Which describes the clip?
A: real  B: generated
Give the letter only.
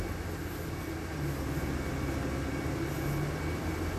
A